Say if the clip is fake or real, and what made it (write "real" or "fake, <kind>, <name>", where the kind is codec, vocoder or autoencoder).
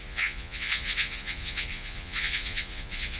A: fake, vocoder, Vocos